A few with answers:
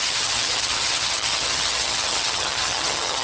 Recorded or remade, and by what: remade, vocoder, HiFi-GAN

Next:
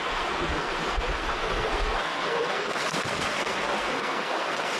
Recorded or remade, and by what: remade, codec, SNAC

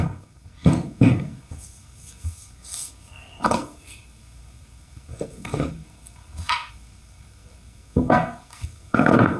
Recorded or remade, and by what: remade, codec, SNAC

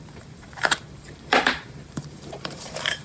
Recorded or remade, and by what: remade, vocoder, BigVGAN v2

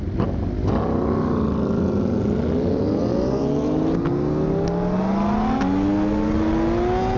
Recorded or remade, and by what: recorded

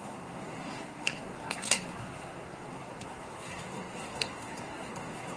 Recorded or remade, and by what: remade, codec, SNAC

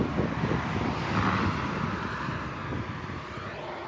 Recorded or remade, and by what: recorded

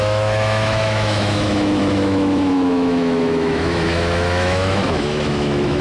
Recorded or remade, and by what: remade, autoencoder, DAC-VAE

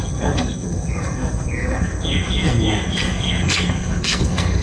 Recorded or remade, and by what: remade, codec, SNAC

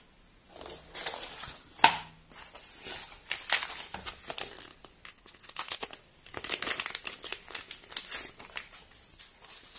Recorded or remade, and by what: recorded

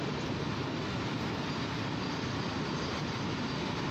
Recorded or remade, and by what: recorded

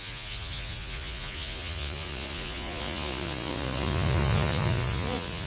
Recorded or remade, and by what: remade, vocoder, Vocos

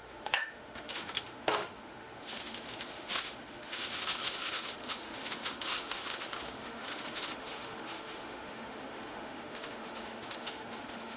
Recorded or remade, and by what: remade, autoencoder, DAC-VAE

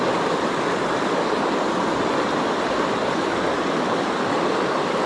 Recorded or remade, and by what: recorded